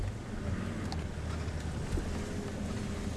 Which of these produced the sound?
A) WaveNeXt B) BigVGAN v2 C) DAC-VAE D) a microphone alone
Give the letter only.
D